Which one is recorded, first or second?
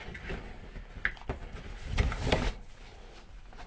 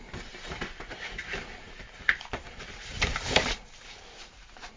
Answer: first